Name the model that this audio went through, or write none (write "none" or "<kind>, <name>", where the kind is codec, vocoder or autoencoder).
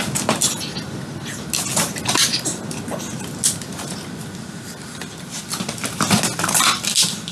none